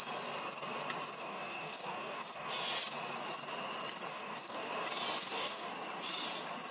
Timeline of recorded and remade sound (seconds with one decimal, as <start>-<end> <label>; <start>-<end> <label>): 0.0-1.2 recorded; 1.2-2.5 remade; 2.5-4.1 recorded; 4.1-4.7 remade; 4.7-5.2 recorded; 5.2-5.7 remade; 5.7-6.7 recorded